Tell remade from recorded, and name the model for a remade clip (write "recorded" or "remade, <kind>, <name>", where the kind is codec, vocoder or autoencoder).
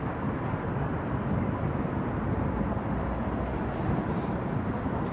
recorded